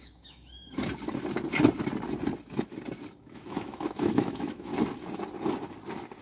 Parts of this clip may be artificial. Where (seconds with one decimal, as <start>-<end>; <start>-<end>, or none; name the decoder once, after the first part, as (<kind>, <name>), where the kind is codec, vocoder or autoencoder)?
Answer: 0.0-0.8 (autoencoder, DAC-VAE); 3.2-4.7